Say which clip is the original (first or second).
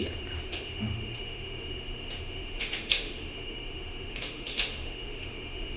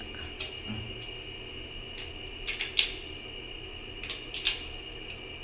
second